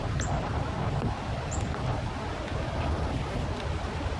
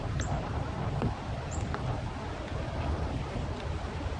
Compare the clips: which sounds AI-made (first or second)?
second